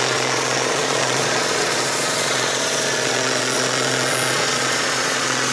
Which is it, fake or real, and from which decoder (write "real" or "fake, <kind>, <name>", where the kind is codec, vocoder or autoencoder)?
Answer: fake, vocoder, Vocos